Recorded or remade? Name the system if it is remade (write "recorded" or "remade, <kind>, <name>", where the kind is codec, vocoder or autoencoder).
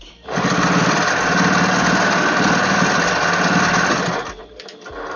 remade, vocoder, BigVGAN v2